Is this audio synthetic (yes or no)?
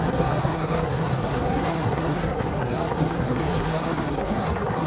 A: yes